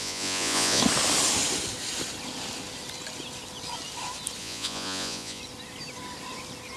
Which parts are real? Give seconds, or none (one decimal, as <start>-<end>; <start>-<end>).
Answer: 0.8-4.4; 5.4-6.8